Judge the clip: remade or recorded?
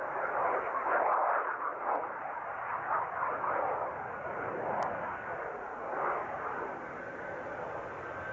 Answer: recorded